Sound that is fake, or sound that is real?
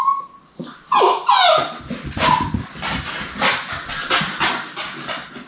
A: real